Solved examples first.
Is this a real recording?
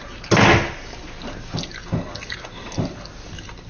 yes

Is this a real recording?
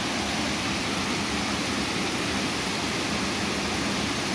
yes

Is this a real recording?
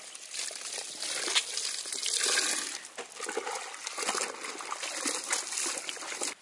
yes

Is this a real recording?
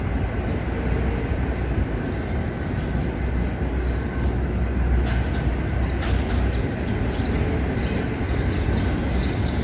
yes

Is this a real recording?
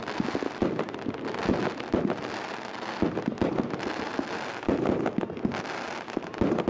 yes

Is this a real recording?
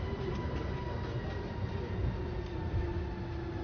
yes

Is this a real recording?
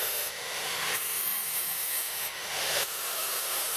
no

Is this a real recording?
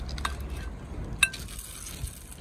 yes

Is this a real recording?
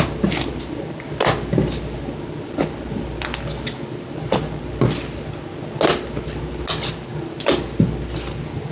yes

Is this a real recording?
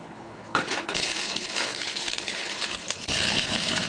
no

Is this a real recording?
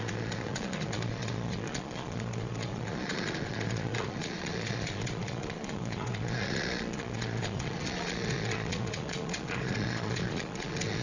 no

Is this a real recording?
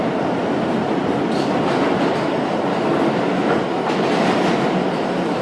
yes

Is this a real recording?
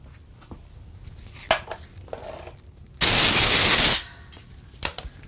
yes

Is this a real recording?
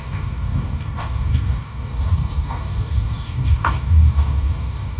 no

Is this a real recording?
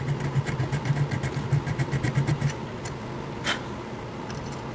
yes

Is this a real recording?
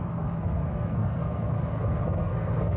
no